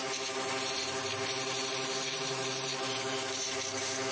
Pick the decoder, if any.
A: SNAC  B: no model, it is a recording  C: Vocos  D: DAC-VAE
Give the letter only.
B